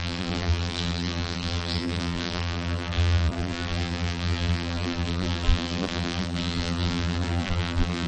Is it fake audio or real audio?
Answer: fake